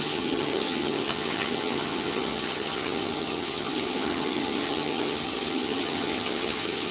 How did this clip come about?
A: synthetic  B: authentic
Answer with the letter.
A